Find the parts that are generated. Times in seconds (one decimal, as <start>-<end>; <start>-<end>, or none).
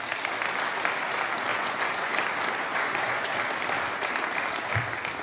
1.5-2.1; 2.7-3.3